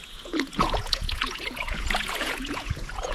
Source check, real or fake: fake